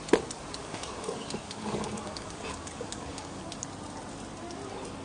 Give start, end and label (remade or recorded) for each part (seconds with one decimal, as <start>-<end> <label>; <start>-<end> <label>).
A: 0.0-0.6 recorded; 0.6-3.4 remade; 3.4-5.0 recorded